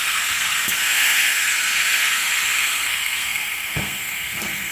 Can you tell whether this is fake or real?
fake